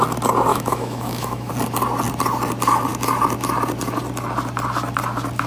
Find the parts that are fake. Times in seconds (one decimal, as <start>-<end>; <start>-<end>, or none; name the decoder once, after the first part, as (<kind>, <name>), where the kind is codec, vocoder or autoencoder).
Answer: 0.5-1.5 (autoencoder, DAC-VAE)